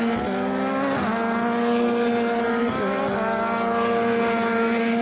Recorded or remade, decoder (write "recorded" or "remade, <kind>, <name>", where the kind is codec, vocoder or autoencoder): recorded